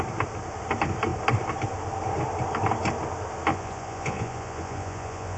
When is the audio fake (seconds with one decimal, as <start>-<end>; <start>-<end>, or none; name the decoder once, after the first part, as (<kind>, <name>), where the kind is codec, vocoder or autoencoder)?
3.5-5.4 (vocoder, Vocos)